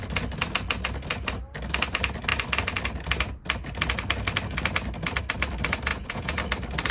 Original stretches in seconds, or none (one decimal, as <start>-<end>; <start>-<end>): 0.0-5.9; 6.4-6.9

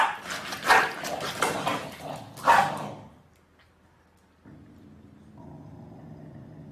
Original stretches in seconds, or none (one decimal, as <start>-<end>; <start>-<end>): 0.0-6.7